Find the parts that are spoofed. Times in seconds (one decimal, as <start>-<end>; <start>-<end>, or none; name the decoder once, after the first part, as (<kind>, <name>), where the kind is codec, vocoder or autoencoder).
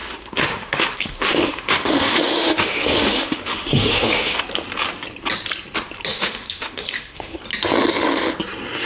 0.0-4.4 (autoencoder, DAC-VAE); 6.1-7.4